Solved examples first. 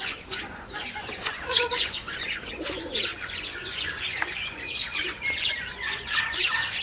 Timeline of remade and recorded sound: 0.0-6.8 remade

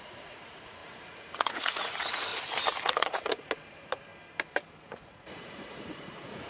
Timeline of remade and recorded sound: 0.0-2.3 remade; 2.3-2.8 recorded; 2.8-4.1 remade; 4.1-4.8 recorded; 4.8-6.5 remade

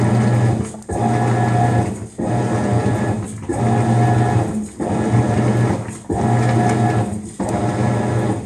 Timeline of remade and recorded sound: 0.0-8.5 recorded

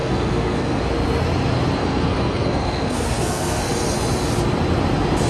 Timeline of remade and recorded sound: 0.0-0.8 remade; 0.8-1.8 recorded; 1.8-3.7 remade; 3.7-5.3 recorded

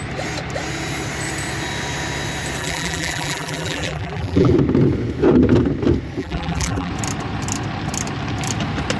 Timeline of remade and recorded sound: 0.0-2.6 recorded; 2.6-4.5 remade; 4.5-6.2 recorded; 6.2-6.9 remade; 6.9-9.0 recorded

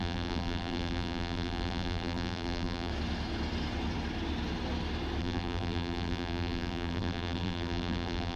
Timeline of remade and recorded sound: 0.0-2.9 remade; 2.9-5.2 recorded; 5.2-8.4 remade

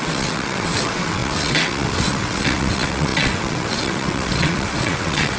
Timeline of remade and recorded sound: 0.0-5.4 remade